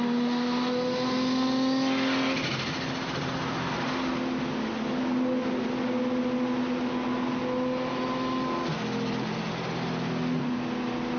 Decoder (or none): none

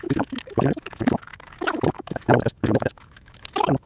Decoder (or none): autoencoder, DAC-VAE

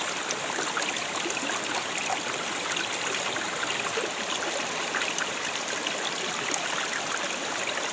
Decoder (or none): none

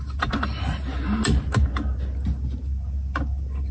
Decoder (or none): none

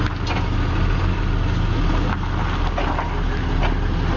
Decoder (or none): none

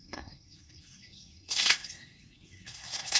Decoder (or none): codec, SNAC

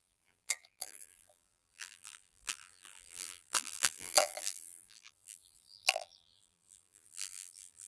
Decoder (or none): vocoder, BigVGAN v2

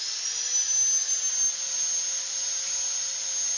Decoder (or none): none